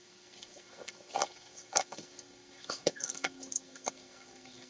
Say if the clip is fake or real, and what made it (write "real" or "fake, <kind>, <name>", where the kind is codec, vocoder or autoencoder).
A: fake, codec, SNAC